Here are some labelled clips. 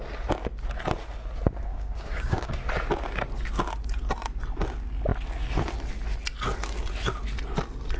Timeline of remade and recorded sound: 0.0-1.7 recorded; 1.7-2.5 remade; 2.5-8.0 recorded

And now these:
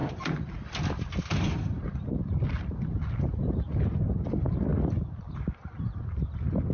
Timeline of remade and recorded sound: 0.0-6.7 recorded

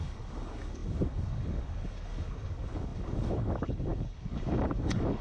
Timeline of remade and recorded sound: 0.0-5.2 remade

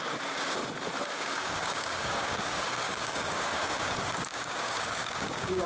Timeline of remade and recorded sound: 0.0-0.6 remade; 0.6-1.1 recorded; 1.1-5.7 remade

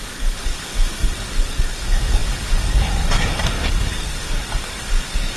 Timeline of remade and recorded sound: 0.0-5.4 remade

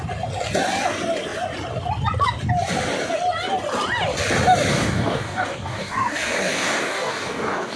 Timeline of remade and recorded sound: 0.0-4.7 recorded; 4.7-7.8 remade